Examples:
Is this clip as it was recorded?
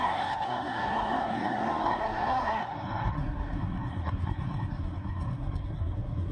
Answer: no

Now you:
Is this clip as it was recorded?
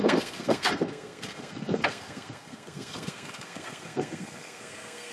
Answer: no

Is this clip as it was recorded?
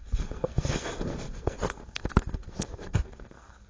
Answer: no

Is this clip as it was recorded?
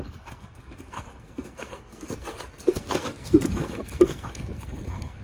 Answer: no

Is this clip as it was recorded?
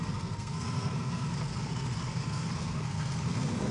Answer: no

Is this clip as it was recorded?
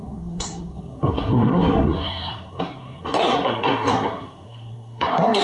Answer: no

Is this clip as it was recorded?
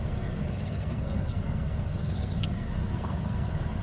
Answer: no